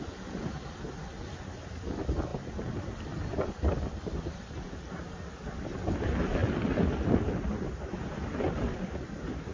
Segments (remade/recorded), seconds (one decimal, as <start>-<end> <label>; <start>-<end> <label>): 0.0-2.3 recorded; 2.3-4.6 remade; 4.6-6.4 recorded; 6.4-7.1 remade; 7.1-8.0 recorded; 8.0-8.7 remade; 8.7-9.5 recorded

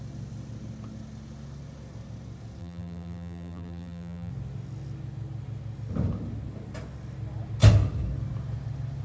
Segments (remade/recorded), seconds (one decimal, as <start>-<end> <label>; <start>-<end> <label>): 0.0-2.6 recorded; 2.6-4.3 remade; 4.3-9.0 recorded

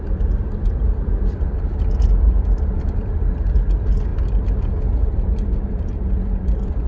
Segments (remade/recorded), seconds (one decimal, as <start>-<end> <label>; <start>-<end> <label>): 0.0-4.1 remade; 4.1-4.7 recorded; 4.7-6.9 remade

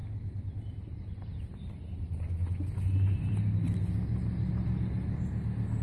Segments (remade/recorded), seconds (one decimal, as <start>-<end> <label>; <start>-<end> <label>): 0.0-5.8 recorded

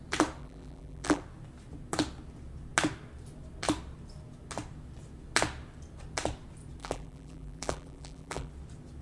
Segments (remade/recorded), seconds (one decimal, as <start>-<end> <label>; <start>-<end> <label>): 0.0-0.4 recorded; 0.4-1.2 remade; 1.2-6.8 recorded; 6.8-8.5 remade; 8.5-9.0 recorded

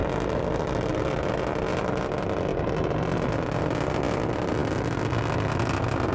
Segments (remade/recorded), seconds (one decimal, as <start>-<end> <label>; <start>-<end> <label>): 0.0-6.1 recorded

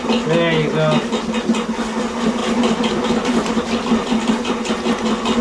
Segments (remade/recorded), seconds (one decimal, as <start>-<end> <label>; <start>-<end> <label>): 0.0-2.4 recorded; 2.4-4.3 remade; 4.3-5.4 recorded

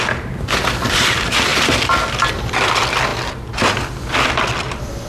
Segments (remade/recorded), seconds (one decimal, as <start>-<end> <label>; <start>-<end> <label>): 0.0-1.5 recorded; 1.5-2.3 remade; 2.3-5.1 recorded